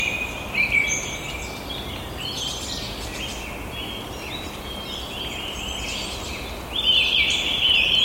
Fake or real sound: real